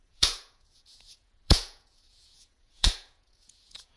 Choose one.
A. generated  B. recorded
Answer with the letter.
A